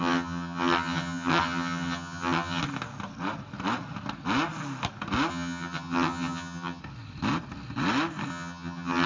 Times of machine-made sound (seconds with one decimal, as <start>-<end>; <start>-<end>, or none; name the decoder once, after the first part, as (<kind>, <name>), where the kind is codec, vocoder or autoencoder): 0.0-2.6 (vocoder, HiFi-GAN); 5.3-6.8; 8.3-9.1